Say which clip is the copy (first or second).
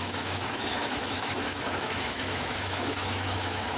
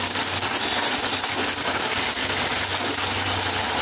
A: first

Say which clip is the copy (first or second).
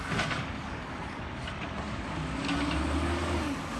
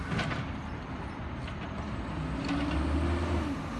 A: first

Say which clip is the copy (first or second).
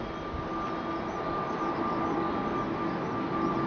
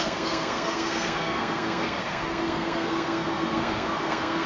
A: second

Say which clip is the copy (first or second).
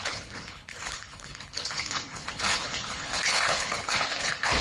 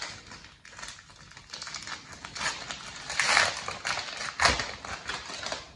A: first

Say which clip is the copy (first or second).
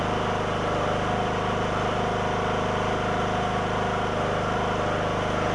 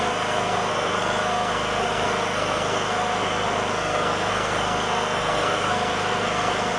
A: second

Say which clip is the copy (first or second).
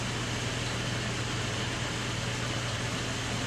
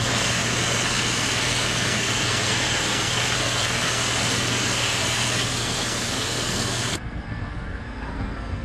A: second